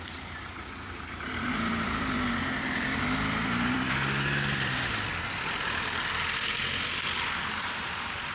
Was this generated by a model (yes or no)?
yes